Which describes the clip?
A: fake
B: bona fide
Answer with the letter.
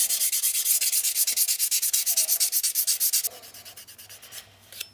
B